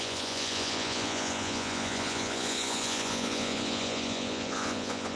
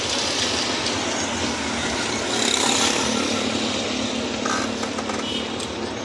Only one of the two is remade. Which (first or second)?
first